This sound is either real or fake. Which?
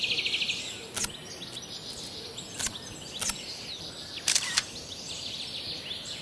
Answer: real